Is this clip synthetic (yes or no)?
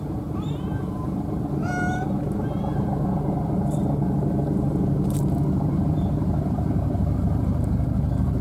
yes